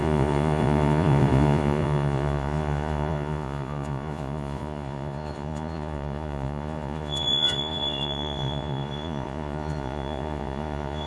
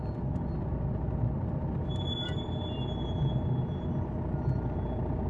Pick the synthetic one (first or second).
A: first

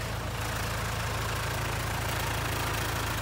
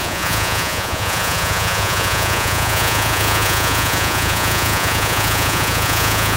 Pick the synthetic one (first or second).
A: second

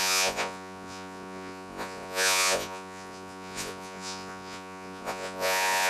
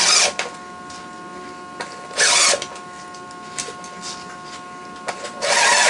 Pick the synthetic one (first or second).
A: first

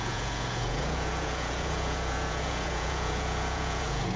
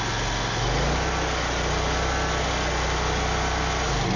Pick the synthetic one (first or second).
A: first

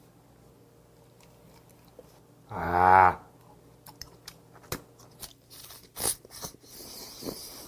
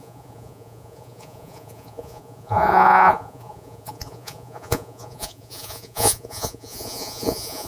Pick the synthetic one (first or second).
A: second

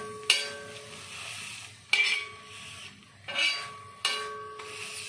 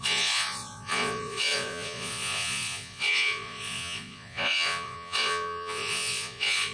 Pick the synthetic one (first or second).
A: second